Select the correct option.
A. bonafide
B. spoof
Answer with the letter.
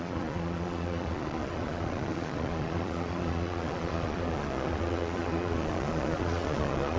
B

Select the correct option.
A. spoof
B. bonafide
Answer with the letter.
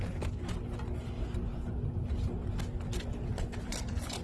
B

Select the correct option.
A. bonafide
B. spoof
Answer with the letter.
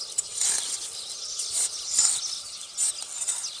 A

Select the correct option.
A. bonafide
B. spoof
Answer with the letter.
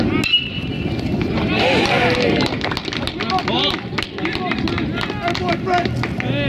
A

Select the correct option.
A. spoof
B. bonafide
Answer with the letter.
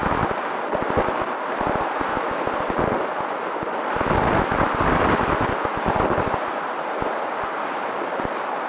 B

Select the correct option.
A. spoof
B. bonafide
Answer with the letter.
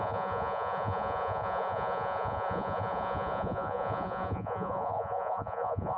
A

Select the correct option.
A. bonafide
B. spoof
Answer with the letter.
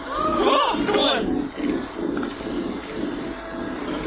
A